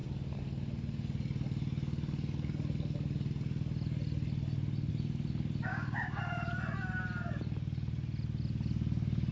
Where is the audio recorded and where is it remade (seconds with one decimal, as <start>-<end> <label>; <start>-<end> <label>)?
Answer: 0.0-5.7 recorded; 5.7-6.2 remade; 6.2-9.3 recorded